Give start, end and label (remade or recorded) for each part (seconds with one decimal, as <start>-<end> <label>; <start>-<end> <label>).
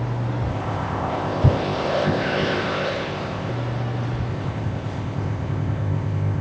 0.0-0.5 recorded; 0.5-3.5 remade; 3.5-4.3 recorded; 4.3-6.4 remade